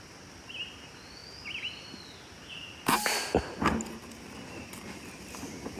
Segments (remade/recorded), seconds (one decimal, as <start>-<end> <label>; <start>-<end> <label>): 0.0-5.8 recorded